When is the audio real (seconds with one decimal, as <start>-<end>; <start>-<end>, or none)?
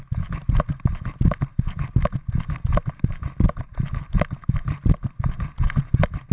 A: 0.0-6.3